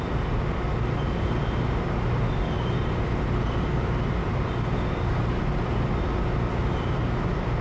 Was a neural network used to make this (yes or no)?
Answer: no